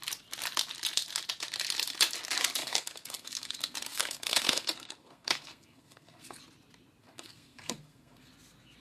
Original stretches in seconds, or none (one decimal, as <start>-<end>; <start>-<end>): 0.0-2.6; 6.4-7.0; 8.3-8.8